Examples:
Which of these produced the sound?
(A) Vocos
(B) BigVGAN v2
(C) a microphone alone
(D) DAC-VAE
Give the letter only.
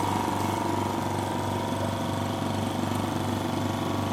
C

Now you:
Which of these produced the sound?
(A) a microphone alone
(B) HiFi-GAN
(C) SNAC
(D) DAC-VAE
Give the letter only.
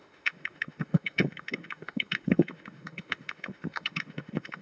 D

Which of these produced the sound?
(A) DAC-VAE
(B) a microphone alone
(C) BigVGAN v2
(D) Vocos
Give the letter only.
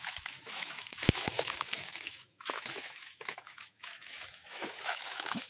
A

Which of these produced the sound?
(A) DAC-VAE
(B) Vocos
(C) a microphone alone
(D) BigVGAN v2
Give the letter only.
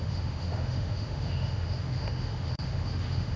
A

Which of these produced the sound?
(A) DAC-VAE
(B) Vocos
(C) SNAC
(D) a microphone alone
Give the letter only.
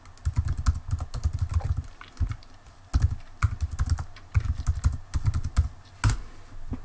D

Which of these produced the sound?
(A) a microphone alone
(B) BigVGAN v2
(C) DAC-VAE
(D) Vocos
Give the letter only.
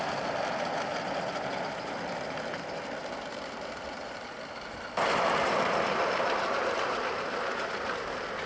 A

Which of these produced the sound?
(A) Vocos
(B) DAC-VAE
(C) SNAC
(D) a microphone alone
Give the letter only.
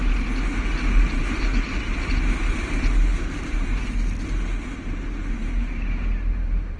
D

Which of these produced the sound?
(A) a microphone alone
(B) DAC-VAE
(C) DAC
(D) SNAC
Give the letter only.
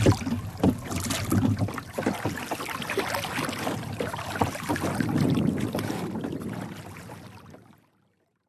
A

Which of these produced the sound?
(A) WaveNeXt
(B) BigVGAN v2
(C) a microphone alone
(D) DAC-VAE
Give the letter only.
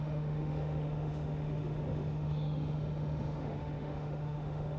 D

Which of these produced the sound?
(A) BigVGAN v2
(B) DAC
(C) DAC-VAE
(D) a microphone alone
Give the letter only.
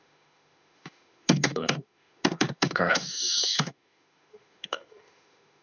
C